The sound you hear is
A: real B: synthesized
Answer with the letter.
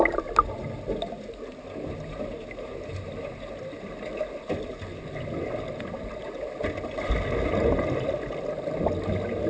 A